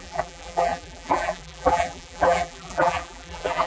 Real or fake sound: fake